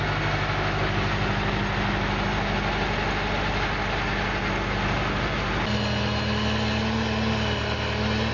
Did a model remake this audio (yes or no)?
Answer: no